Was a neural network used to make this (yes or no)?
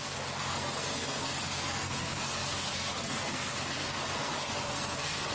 yes